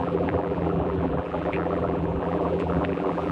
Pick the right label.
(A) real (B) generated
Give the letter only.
B